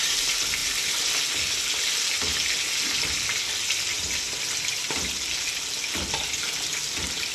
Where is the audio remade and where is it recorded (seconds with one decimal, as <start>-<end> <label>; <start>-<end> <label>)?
0.0-7.3 recorded